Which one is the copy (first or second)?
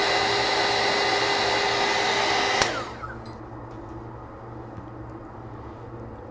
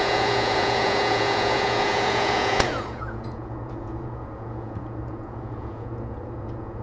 second